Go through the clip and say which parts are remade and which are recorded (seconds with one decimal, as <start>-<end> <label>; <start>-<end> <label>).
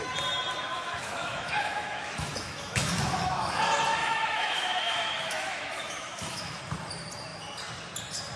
0.0-0.7 recorded; 0.7-3.6 remade; 3.6-4.0 recorded; 4.0-6.6 remade; 6.6-8.4 recorded